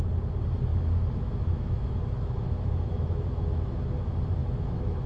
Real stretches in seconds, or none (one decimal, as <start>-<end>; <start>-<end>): 0.0-0.7; 3.8-4.4

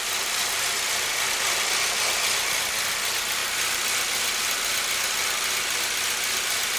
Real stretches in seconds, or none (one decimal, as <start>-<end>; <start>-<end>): 0.0-6.8

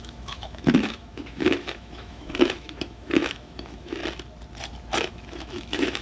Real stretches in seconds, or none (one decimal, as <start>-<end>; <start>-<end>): 4.0-5.1

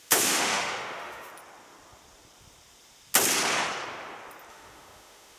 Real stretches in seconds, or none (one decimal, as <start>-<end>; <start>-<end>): 1.3-4.5